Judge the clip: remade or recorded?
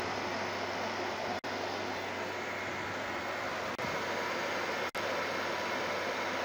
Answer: recorded